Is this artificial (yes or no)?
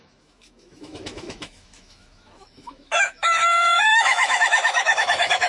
yes